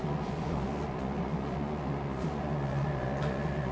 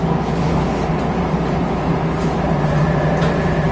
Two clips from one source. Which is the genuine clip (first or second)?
second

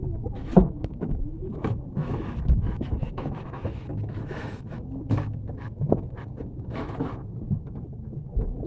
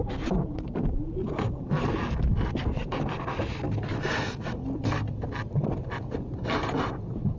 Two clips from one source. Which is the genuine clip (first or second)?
second